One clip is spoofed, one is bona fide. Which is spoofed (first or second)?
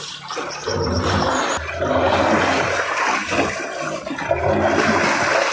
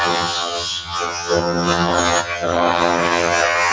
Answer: second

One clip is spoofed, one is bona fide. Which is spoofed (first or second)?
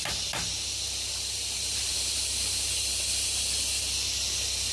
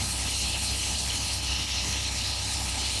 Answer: second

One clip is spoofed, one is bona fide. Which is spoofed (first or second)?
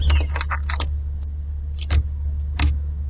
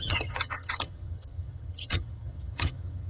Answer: second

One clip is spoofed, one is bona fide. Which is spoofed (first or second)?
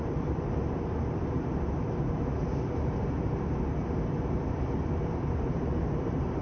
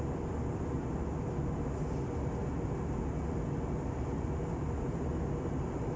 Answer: first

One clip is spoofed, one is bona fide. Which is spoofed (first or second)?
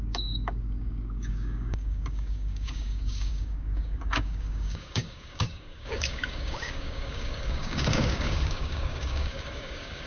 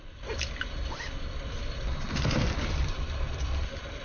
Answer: first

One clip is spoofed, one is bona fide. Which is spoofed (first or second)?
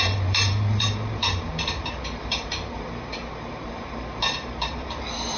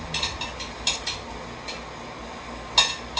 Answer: first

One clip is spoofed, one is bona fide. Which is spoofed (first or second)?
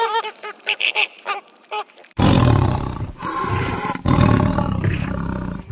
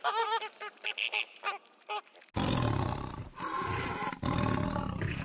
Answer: first